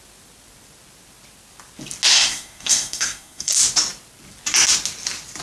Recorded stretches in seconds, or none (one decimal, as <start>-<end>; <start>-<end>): 0.0-2.1; 3.5-5.4